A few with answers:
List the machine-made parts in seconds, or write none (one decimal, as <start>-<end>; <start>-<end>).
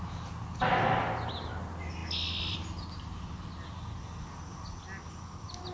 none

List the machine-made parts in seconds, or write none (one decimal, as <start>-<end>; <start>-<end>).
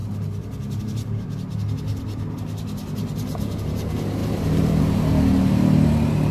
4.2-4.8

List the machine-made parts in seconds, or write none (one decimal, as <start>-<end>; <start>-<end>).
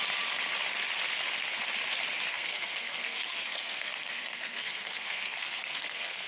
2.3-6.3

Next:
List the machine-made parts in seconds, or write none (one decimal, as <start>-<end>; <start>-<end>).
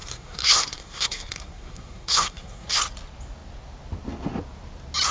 0.0-2.8